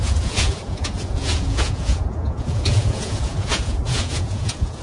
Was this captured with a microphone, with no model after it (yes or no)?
no